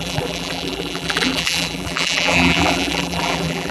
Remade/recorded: remade